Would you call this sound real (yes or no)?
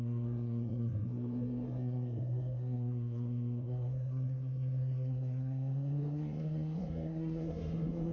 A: no